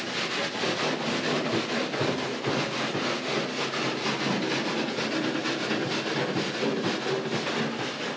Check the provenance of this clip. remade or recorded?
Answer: recorded